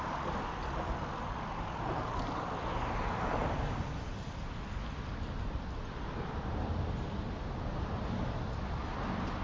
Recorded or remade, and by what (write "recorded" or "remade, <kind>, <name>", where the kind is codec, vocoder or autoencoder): recorded